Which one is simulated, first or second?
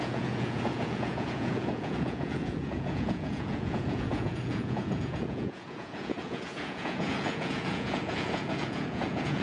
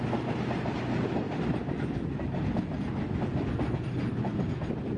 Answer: first